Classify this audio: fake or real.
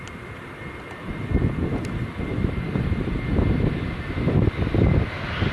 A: real